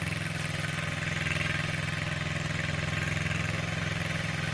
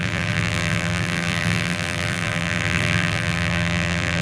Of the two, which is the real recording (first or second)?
first